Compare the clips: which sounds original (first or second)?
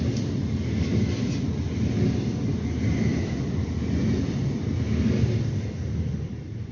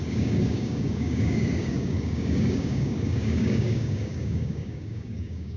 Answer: first